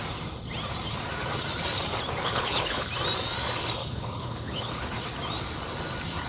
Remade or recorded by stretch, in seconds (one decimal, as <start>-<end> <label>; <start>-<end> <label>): 0.0-2.2 recorded; 2.2-2.9 remade; 2.9-3.8 recorded; 3.8-4.7 remade; 4.7-6.3 recorded